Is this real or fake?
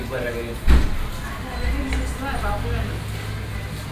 real